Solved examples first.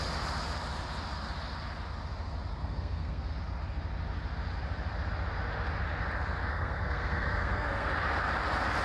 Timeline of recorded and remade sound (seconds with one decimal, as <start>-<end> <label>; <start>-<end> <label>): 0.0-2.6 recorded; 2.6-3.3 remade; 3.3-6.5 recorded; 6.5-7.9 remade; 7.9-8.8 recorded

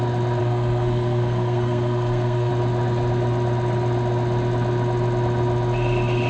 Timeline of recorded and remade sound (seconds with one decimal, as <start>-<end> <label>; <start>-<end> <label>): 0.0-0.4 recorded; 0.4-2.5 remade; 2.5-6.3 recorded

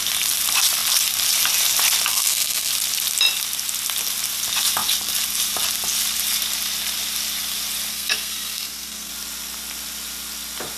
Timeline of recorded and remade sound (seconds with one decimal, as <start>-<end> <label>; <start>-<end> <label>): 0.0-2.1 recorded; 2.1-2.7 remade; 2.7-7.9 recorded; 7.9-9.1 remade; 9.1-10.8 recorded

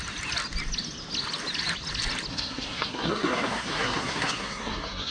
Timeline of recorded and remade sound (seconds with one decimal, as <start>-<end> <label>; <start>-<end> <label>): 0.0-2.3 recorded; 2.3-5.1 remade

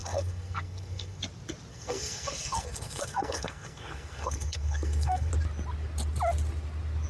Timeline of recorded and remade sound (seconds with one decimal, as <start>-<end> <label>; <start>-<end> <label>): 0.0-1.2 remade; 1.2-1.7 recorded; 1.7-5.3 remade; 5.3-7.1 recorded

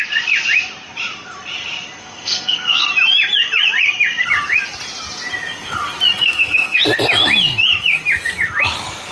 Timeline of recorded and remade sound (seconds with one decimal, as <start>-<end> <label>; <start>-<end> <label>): 0.0-2.0 recorded; 2.0-2.9 remade; 2.9-6.2 recorded; 6.2-6.8 remade; 6.8-9.1 recorded